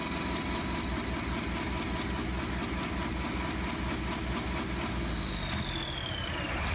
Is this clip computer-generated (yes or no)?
no